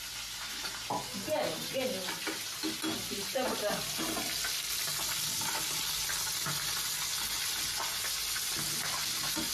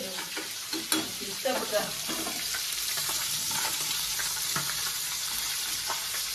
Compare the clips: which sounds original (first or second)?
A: first